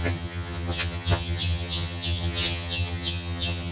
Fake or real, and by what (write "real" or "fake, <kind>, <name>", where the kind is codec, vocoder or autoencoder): fake, vocoder, HiFi-GAN